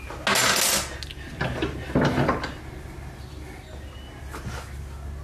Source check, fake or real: real